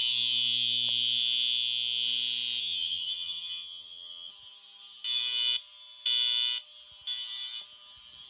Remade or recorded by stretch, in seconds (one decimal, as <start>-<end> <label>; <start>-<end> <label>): 0.0-2.6 recorded; 2.6-4.3 remade; 4.3-8.3 recorded